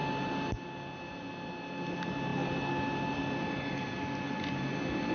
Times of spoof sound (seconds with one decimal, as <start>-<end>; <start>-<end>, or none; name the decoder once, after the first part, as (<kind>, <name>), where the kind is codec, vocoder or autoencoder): none